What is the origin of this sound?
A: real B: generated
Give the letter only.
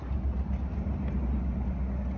A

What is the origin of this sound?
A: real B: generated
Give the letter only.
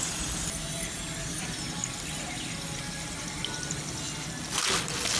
A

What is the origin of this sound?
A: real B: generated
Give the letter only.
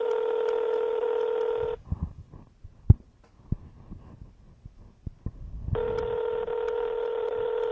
A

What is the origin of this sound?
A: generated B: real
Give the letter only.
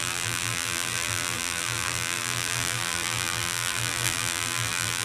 A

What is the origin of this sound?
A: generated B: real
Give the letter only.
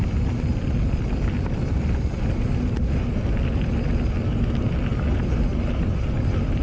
B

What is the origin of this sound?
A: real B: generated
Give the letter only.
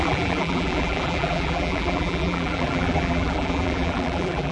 B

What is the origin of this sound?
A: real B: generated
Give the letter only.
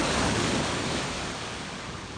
B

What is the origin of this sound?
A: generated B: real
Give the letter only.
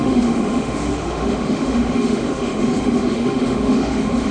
A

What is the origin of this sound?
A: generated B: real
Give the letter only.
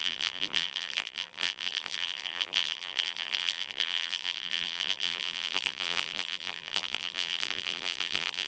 A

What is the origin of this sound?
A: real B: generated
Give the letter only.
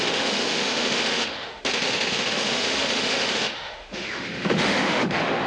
B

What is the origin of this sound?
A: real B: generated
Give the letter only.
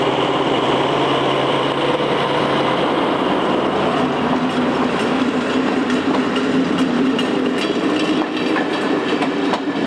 B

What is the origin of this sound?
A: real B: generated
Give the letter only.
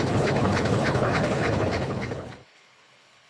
B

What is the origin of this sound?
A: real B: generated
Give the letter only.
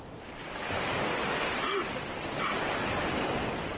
A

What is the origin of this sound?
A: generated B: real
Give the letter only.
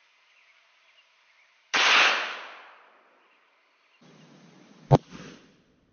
B